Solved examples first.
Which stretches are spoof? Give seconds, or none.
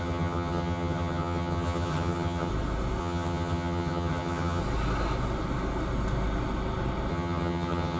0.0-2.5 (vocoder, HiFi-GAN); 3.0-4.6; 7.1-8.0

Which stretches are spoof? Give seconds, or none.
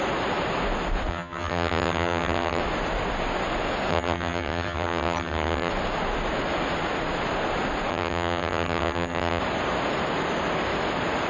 1.1-2.6 (vocoder, HiFi-GAN); 3.9-5.7; 7.9-9.4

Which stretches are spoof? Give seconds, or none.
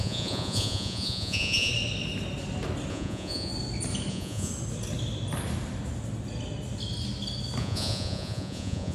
0.0-1.7 (vocoder, Vocos); 2.9-3.5; 4.1-4.5; 7.6-8.9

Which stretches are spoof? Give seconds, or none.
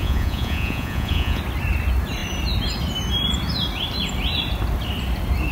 0.0-1.4 (vocoder, Vocos)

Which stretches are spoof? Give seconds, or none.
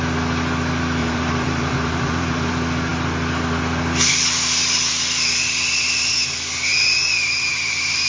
1.0-2.5 (vocoder, BigVGAN v2)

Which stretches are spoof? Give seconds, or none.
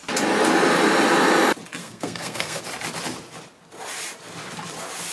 1.8-2.6 (codec, SNAC)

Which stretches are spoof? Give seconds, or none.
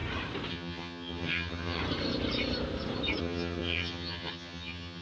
0.5-1.8 (vocoder, HiFi-GAN); 3.2-5.0